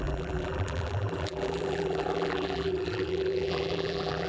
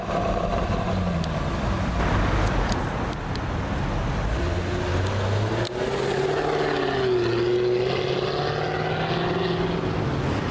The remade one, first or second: first